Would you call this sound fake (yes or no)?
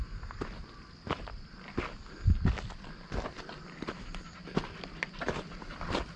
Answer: no